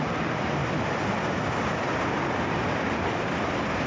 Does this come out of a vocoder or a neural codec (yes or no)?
no